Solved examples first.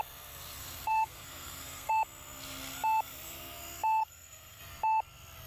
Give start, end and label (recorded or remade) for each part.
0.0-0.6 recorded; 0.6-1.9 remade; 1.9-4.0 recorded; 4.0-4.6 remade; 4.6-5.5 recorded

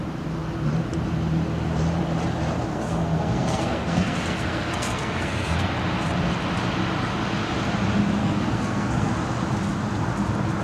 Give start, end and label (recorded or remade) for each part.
0.0-2.7 recorded; 2.7-5.7 remade; 5.7-8.2 recorded; 8.2-9.1 remade; 9.1-10.6 recorded